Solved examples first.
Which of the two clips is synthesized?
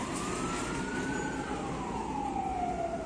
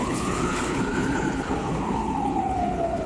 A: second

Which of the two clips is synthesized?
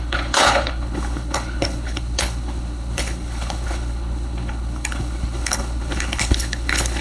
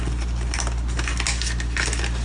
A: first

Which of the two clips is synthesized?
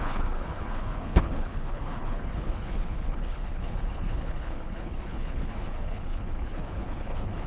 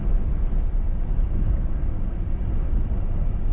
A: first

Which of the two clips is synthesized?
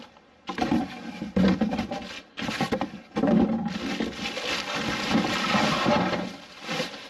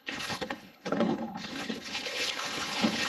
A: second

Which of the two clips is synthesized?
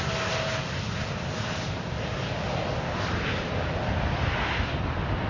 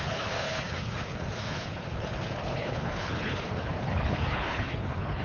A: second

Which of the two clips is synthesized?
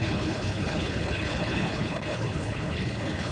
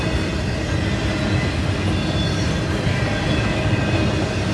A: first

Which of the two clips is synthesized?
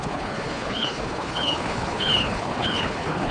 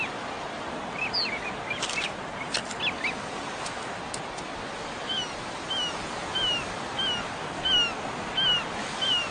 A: first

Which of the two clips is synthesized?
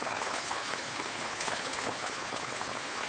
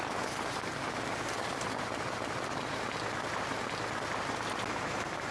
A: first